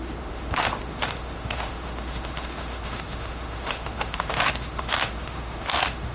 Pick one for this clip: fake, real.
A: fake